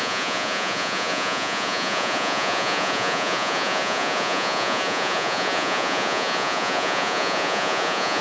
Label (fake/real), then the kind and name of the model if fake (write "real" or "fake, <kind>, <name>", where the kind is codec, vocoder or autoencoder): fake, vocoder, Vocos